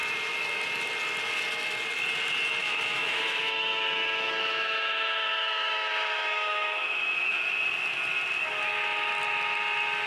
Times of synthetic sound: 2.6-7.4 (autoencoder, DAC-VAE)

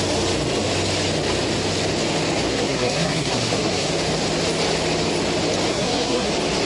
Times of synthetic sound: 2.5-3.9 (codec, SNAC); 5.7-6.3

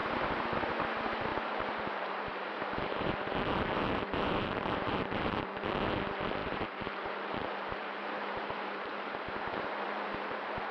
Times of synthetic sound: 0.0-0.7 (vocoder, BigVGAN v2); 1.3-5.7; 6.4-10.7